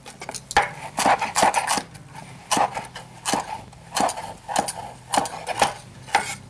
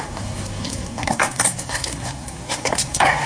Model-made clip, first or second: second